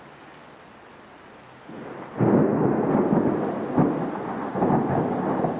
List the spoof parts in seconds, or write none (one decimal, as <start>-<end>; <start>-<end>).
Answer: none